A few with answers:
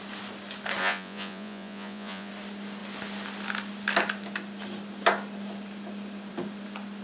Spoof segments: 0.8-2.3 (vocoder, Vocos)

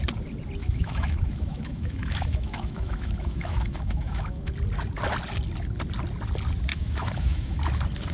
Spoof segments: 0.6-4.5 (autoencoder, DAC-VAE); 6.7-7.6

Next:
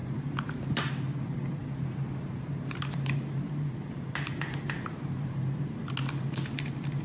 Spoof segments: 0.0-0.9 (vocoder, BigVGAN v2); 1.6-5.8

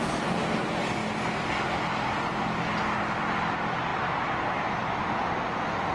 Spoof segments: 3.9-4.7 (vocoder, BigVGAN v2); 5.2-5.9

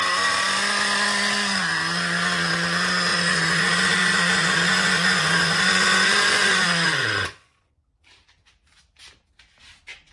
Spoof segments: 3.1-7.9 (vocoder, Vocos)